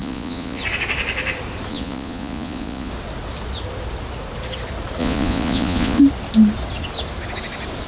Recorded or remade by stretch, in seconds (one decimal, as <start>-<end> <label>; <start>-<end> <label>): 0.0-0.6 remade; 0.6-1.7 recorded; 1.7-2.9 remade; 2.9-5.0 recorded; 5.0-6.0 remade; 6.0-7.9 recorded

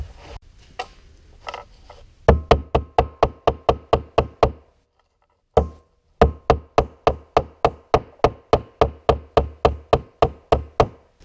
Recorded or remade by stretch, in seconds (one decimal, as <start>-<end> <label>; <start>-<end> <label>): 0.0-11.2 recorded

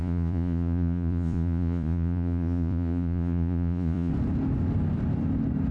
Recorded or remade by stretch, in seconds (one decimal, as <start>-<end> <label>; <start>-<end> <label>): 0.0-4.1 remade; 4.1-5.7 recorded

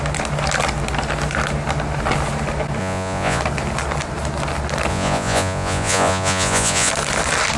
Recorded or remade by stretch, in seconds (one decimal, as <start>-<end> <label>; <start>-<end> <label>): 0.0-2.8 recorded; 2.8-3.4 remade; 3.4-4.9 recorded; 4.9-6.9 remade; 6.9-7.6 recorded

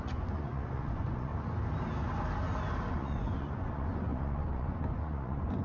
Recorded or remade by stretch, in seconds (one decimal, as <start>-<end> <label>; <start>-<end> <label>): 0.0-1.3 remade; 1.3-2.9 recorded; 2.9-5.6 remade

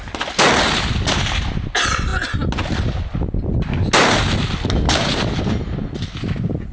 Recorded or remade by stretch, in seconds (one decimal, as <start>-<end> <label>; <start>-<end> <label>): 0.0-6.7 recorded

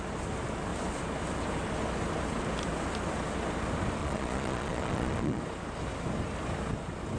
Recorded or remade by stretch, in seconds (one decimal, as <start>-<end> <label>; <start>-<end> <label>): 0.0-4.0 recorded; 4.0-5.4 remade; 5.4-7.2 recorded